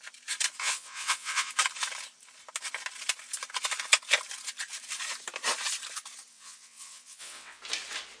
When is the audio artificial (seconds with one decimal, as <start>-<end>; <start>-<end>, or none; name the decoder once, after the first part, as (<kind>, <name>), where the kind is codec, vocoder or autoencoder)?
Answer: 0.6-1.5 (vocoder, WaveNeXt); 6.3-7.6